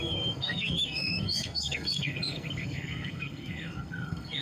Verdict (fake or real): fake